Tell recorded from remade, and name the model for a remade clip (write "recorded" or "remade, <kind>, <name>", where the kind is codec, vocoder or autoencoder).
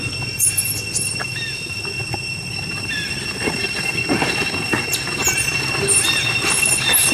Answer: recorded